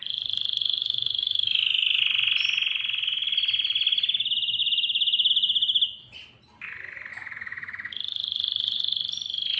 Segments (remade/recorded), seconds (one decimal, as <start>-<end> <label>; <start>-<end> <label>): 0.0-0.6 recorded; 0.6-2.0 remade; 2.0-4.6 recorded; 4.6-5.3 remade; 5.3-7.1 recorded; 7.1-7.9 remade; 7.9-9.6 recorded